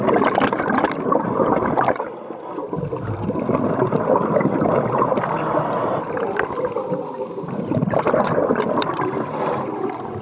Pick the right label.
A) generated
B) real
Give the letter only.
B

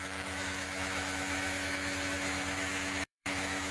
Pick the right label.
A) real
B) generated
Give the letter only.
B